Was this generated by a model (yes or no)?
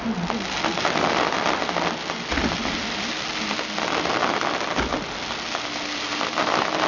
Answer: no